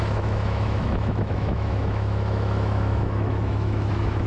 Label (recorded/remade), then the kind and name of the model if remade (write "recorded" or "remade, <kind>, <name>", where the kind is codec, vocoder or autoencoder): remade, autoencoder, DAC-VAE